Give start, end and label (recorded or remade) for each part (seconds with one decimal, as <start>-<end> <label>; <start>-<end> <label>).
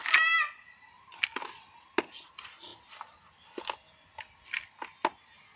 0.0-5.6 recorded